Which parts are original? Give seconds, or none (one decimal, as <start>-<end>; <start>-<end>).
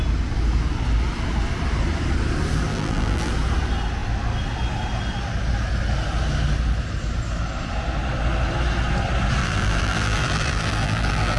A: 0.0-2.7; 3.3-9.4